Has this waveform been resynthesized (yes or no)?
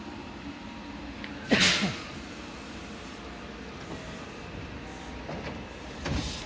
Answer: no